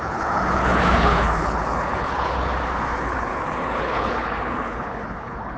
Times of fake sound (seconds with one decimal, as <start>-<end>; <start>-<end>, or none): 0.0-2.5; 3.0-5.6